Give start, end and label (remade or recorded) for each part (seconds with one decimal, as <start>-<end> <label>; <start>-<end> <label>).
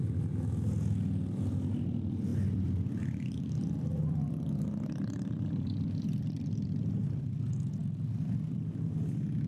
0.0-2.3 recorded; 2.3-6.5 remade; 6.5-9.5 recorded